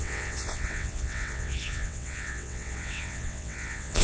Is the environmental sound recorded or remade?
remade